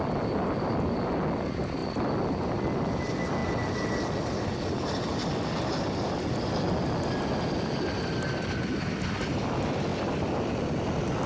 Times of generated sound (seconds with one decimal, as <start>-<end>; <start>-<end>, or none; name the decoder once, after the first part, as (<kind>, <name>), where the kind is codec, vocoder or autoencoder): none

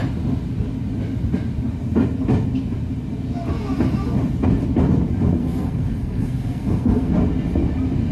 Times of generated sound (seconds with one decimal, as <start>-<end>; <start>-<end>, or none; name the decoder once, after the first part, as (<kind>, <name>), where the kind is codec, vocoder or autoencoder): 5.4-7.1 (codec, SNAC)